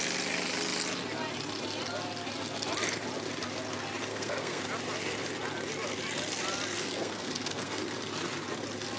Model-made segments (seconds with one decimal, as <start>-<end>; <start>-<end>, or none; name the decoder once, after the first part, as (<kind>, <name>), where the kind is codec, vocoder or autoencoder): 4.1-4.6 (codec, SNAC); 6.8-7.8